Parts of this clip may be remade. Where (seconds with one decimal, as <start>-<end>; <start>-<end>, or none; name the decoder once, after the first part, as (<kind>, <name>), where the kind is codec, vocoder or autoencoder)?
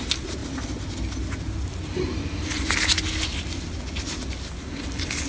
none